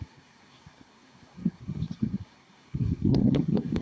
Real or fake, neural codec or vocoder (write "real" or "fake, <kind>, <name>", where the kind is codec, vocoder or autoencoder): fake, codec, SNAC